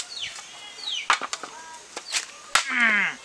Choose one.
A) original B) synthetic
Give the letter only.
A